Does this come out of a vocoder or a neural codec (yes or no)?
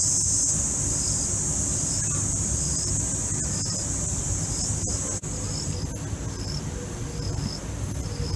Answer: no